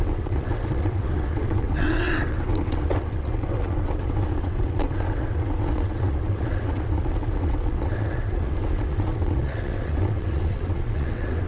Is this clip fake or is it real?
fake